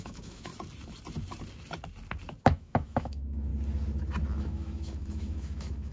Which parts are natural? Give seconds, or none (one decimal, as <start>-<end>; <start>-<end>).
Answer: 0.5-2.4; 3.5-4.4